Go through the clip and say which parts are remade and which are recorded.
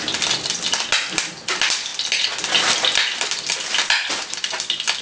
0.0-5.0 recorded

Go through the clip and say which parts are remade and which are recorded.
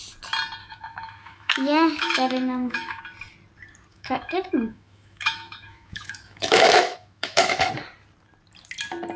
0.0-0.6 recorded; 0.6-3.0 remade; 3.0-3.9 recorded; 3.9-7.7 remade; 7.7-9.2 recorded